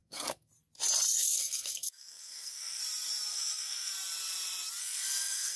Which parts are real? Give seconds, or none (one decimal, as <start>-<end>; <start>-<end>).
0.5-1.2; 2.8-3.3; 3.9-4.8